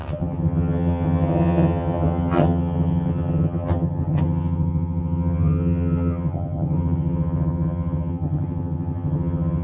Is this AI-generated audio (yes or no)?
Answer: yes